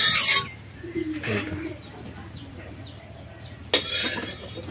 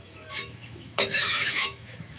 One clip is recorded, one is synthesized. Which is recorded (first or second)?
first